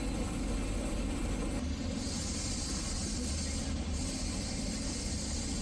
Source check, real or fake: real